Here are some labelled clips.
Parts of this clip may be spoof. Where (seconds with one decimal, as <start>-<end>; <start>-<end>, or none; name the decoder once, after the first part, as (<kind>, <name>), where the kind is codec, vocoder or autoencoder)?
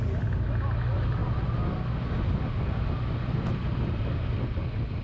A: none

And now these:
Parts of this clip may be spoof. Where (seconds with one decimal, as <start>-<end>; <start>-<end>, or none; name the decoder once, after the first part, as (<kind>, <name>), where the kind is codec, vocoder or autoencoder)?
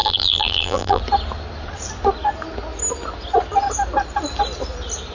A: 0.0-1.0 (vocoder, BigVGAN v2)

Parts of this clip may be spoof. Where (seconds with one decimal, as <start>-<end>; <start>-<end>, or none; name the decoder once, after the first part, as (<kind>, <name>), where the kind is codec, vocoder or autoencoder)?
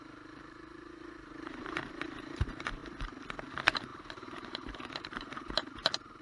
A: 0.0-2.8 (vocoder, BigVGAN v2); 3.5-6.2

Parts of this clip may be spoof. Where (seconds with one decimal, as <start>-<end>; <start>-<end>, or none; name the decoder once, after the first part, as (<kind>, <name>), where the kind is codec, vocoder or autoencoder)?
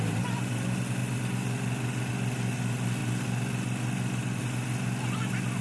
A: none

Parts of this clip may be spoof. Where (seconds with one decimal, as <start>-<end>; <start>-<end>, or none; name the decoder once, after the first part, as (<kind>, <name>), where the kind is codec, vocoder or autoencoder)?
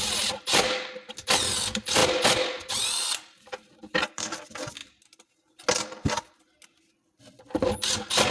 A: 0.0-2.0 (vocoder, BigVGAN v2); 2.6-4.8; 7.2-8.3